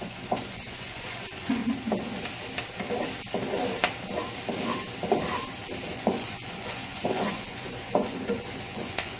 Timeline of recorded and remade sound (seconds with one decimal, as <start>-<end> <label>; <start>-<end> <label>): 0.0-1.6 remade; 1.6-5.9 recorded; 5.9-9.2 remade